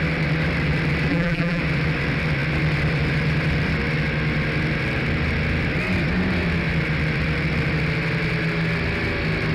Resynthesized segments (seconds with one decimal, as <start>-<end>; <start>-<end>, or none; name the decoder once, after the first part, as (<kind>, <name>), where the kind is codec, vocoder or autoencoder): 1.1-1.6 (vocoder, BigVGAN v2)